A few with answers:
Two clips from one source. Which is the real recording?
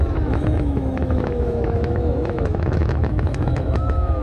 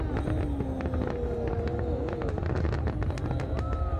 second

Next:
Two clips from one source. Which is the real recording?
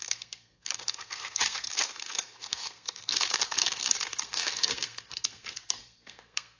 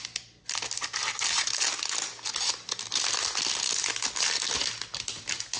second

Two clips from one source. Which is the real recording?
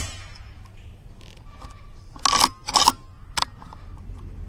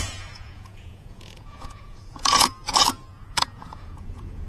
first